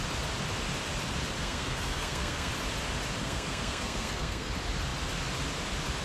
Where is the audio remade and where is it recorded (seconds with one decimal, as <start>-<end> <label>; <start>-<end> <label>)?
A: 0.0-1.4 recorded; 1.4-2.5 remade; 2.5-3.2 recorded; 3.2-4.5 remade; 4.5-6.0 recorded